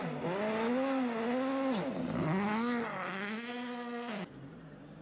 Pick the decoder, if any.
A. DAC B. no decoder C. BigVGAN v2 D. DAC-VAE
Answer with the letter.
B